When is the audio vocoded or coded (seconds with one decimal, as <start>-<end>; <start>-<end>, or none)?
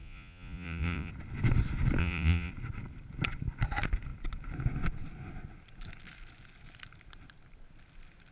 0.0-1.1; 2.0-2.5